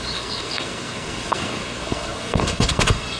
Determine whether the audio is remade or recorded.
remade